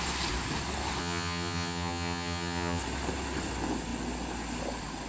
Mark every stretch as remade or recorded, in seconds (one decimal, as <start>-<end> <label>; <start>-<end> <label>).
0.0-1.0 recorded; 1.0-2.8 remade; 2.8-5.1 recorded

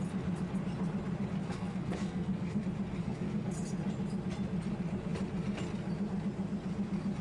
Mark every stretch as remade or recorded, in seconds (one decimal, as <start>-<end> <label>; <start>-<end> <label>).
0.0-1.4 recorded; 1.4-2.6 remade; 2.6-3.0 recorded; 3.0-3.5 remade; 3.5-7.2 recorded